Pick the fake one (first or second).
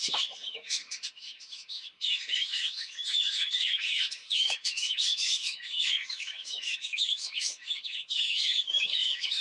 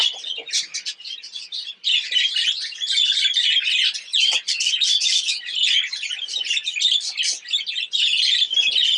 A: first